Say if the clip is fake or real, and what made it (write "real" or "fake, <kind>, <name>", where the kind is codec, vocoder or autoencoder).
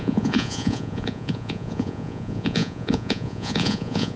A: fake, vocoder, Vocos